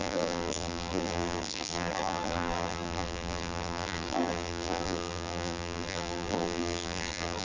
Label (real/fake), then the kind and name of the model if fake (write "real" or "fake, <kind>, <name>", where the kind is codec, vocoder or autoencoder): fake, vocoder, BigVGAN v2